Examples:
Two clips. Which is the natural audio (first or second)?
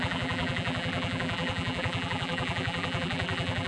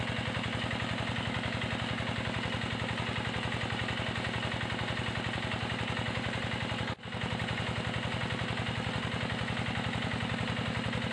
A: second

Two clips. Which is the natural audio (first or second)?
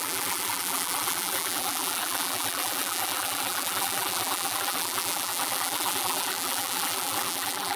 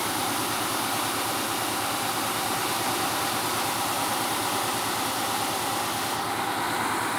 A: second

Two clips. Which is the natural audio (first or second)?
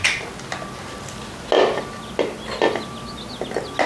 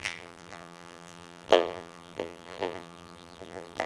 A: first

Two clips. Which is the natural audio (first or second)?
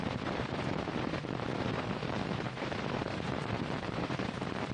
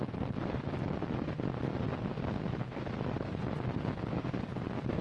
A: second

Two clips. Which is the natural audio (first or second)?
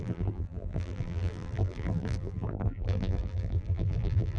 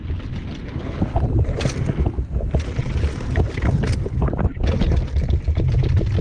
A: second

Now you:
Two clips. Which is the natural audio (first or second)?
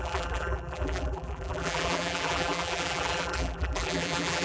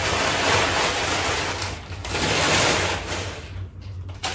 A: second